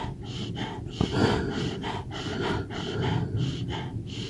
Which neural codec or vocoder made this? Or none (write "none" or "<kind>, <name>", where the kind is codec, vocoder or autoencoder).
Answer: none